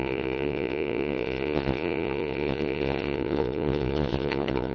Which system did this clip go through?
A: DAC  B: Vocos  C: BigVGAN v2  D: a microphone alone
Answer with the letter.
B